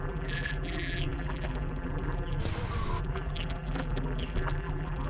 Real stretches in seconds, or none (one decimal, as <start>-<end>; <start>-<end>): 2.4-3.0